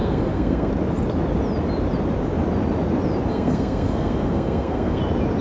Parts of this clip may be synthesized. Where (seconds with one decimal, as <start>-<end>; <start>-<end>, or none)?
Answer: 0.0-0.7; 3.3-5.0